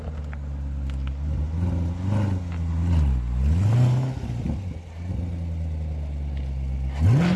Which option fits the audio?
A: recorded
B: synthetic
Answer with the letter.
A